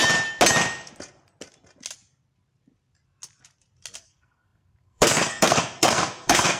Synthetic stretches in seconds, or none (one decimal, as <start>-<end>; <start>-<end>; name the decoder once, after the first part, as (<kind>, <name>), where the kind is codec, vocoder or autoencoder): 4.0-6.6 (codec, SNAC)